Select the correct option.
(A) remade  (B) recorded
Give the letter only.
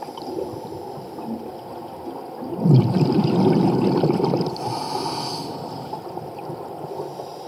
B